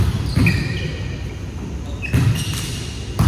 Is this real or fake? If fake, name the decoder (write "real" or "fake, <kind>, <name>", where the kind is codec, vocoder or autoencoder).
real